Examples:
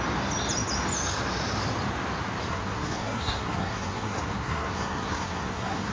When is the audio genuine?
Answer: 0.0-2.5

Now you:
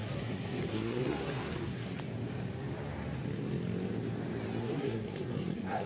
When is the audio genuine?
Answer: 1.9-4.6

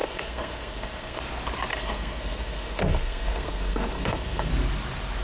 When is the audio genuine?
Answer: 1.2-1.7; 4.5-5.2

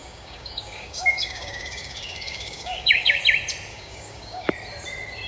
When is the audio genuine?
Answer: 3.2-3.7; 4.5-5.3

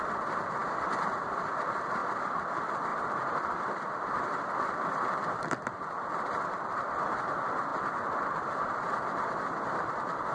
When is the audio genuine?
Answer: 0.0-2.0; 2.5-2.9; 5.9-7.7

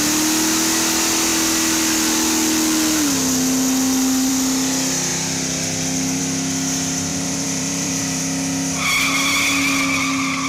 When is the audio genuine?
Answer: 0.0-7.1; 8.2-10.5

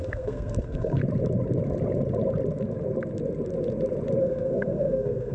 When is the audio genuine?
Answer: 1.0-4.2